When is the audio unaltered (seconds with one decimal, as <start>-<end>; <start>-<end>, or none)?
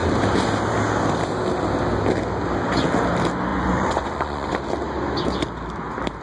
0.0-3.5; 4.5-6.2